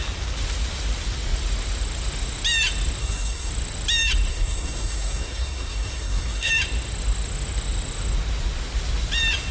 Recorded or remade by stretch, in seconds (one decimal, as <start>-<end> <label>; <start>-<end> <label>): 0.0-3.0 recorded; 3.0-3.5 remade; 3.5-4.3 recorded; 4.3-6.5 remade; 6.5-9.5 recorded